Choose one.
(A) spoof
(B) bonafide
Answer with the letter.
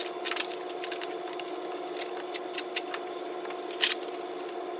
B